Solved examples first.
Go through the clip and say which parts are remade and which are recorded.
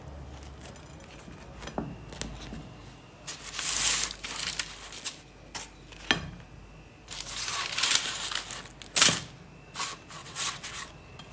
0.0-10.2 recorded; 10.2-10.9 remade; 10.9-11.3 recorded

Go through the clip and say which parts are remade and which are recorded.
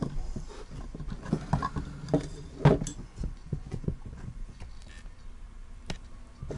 0.0-2.9 recorded; 2.9-4.6 remade; 4.6-6.6 recorded